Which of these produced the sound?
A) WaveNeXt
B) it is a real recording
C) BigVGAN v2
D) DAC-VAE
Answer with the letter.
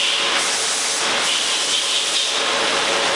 B